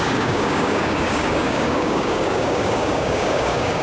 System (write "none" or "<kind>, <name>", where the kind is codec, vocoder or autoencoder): codec, DAC